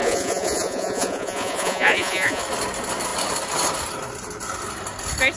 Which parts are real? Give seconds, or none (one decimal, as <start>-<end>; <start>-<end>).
2.4-5.4